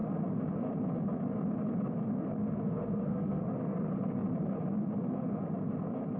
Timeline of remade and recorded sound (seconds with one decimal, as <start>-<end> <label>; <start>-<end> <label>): 0.0-2.4 recorded; 2.4-3.4 remade; 3.4-6.2 recorded

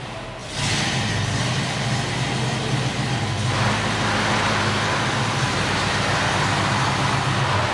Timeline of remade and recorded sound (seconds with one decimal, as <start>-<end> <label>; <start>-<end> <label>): 0.0-7.7 recorded

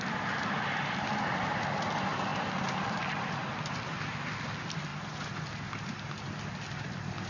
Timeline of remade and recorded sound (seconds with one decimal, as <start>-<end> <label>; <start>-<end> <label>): 0.0-7.3 recorded